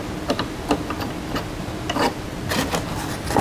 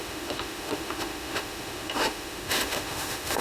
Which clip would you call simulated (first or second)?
second